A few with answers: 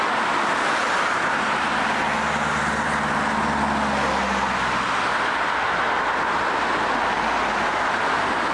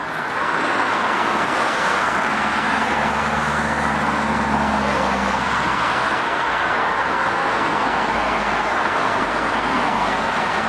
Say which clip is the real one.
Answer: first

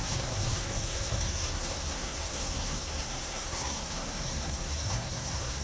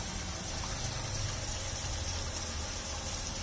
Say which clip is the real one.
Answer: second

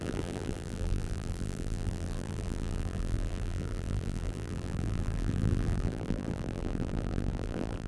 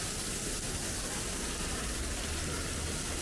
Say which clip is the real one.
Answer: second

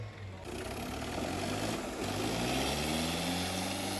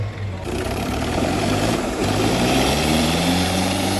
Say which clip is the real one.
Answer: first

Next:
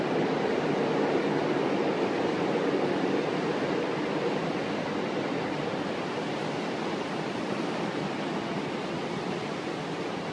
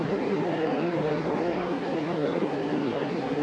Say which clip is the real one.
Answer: first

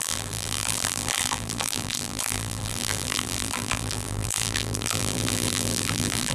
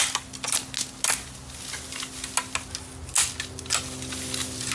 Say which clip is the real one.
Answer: second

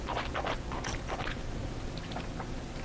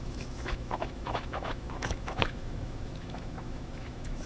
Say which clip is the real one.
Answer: first